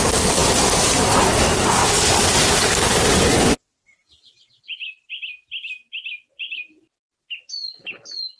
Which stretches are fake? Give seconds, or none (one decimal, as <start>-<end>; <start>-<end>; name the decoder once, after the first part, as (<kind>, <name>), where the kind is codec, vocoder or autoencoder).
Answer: none